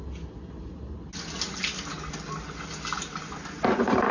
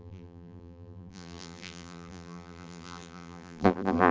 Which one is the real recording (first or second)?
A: first